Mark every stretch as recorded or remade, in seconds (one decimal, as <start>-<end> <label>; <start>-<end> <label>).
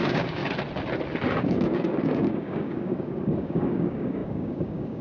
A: 0.0-0.4 remade; 0.4-1.4 recorded; 1.4-5.0 remade